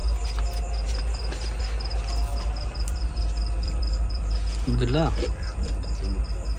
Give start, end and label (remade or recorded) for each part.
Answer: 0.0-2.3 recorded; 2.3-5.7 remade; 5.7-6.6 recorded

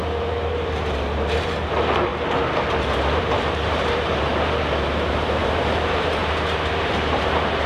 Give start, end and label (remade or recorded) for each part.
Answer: 0.0-2.1 remade; 2.1-3.2 recorded; 3.2-4.3 remade; 4.3-5.1 recorded; 5.1-6.2 remade; 6.2-6.8 recorded; 6.8-7.7 remade

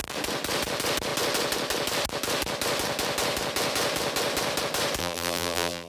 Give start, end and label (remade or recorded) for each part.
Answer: 0.0-5.0 recorded; 5.0-5.9 remade

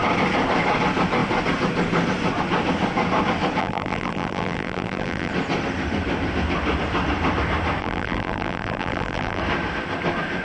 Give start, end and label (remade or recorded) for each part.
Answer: 0.0-3.6 recorded; 3.6-5.3 remade; 5.3-7.8 recorded; 7.8-9.4 remade; 9.4-10.4 recorded